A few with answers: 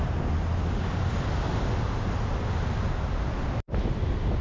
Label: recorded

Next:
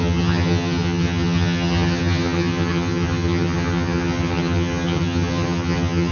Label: remade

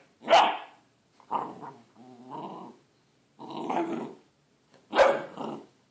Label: recorded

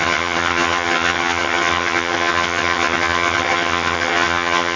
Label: remade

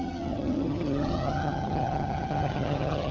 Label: remade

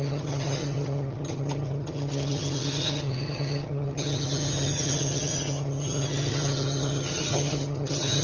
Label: remade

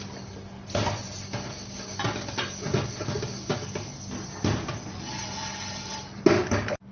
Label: recorded